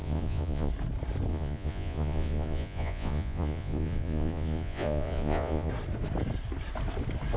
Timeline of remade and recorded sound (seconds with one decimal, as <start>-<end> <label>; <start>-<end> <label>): 0.0-0.7 remade; 0.7-1.3 recorded; 1.3-5.7 remade; 5.7-7.4 recorded